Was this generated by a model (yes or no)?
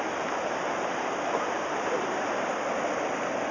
no